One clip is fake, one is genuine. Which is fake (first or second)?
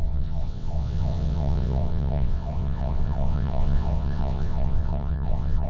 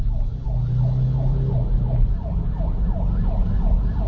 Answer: first